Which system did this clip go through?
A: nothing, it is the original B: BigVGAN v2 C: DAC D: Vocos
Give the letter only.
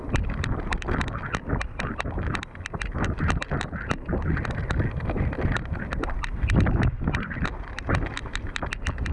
A